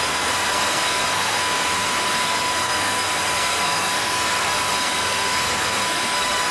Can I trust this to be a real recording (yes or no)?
no